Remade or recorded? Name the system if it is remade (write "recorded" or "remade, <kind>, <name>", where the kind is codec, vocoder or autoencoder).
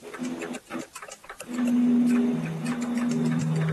remade, vocoder, BigVGAN v2